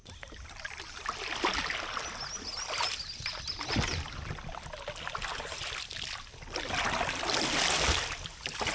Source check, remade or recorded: recorded